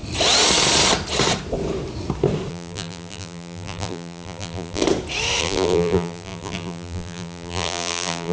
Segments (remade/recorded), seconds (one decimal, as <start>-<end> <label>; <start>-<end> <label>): 0.0-2.5 recorded; 2.5-4.8 remade; 4.8-5.4 recorded; 5.4-8.3 remade